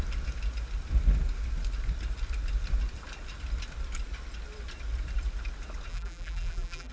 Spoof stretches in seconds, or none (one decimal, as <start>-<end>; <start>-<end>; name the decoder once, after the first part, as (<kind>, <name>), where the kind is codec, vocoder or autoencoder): 5.9-6.9 (vocoder, BigVGAN v2)